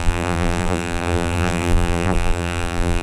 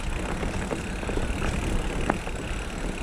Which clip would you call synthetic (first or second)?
first